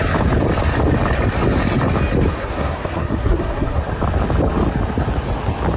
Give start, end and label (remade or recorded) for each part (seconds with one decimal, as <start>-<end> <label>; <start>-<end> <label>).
0.0-2.4 recorded; 2.4-3.8 remade; 3.8-5.8 recorded